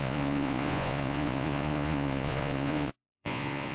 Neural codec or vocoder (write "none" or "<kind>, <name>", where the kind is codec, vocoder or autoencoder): vocoder, Vocos